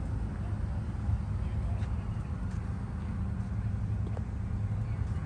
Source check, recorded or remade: recorded